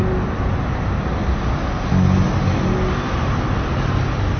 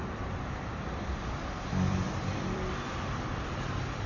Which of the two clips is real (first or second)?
first